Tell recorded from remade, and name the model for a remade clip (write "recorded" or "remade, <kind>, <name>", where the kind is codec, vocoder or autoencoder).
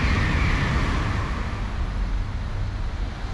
recorded